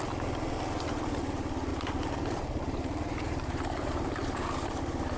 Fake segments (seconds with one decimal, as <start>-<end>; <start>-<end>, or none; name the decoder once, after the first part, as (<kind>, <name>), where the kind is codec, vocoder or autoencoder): 1.7-4.8 (vocoder, BigVGAN v2)